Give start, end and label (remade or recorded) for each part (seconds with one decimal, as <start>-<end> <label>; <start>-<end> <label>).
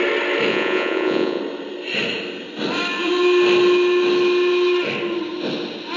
0.0-0.5 recorded; 0.5-1.4 remade; 1.4-6.0 recorded